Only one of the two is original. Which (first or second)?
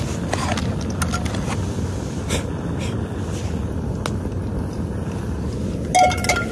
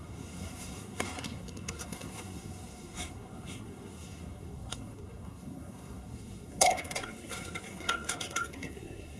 first